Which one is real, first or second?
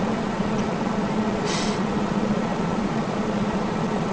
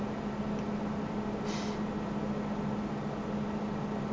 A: second